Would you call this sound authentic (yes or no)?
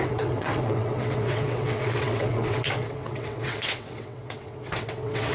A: no